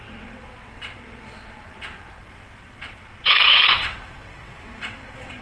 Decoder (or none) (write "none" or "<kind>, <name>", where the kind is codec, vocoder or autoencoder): vocoder, WaveNeXt